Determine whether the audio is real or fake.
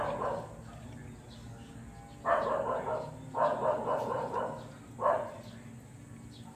real